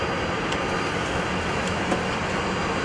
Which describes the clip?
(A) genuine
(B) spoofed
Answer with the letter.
A